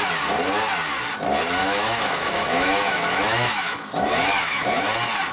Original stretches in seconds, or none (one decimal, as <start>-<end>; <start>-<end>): 0.0-1.6; 4.8-5.3